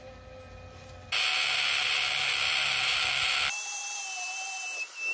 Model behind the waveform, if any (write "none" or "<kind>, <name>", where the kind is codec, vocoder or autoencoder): none